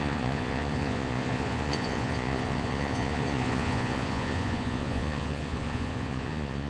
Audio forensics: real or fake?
fake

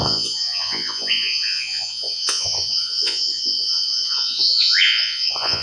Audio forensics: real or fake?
fake